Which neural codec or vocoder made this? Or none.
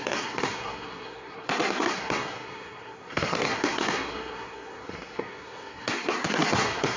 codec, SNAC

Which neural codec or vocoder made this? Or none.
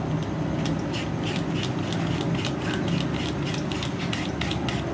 none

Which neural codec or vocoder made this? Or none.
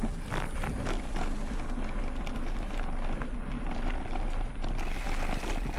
none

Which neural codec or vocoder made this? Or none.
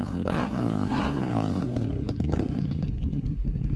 codec, SNAC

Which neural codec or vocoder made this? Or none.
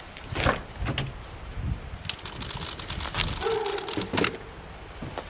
none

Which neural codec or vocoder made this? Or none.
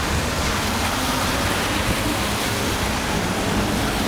none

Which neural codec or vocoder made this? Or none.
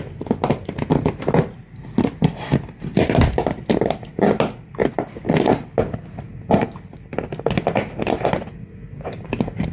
none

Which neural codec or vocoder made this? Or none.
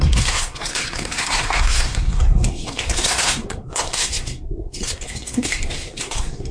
codec, SNAC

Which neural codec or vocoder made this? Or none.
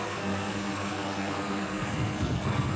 codec, SNAC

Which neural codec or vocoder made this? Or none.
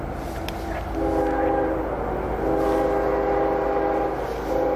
none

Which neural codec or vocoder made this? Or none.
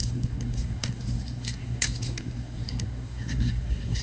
codec, SNAC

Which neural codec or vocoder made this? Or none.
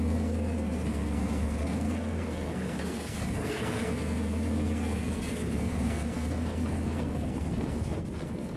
codec, SNAC